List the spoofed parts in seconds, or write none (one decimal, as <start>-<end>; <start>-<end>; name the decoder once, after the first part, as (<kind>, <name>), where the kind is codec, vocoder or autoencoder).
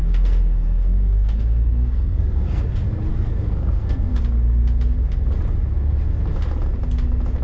0.0-2.6 (codec, SNAC); 3.1-4.2